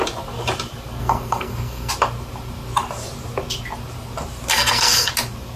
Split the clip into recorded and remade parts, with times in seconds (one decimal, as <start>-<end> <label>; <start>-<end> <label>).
0.0-1.0 recorded; 1.0-1.9 remade; 1.9-4.5 recorded; 4.5-5.1 remade; 5.1-5.6 recorded